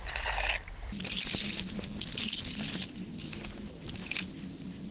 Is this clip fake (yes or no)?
no